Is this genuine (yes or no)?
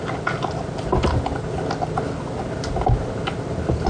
yes